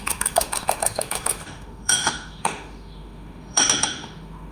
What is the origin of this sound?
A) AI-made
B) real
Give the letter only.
A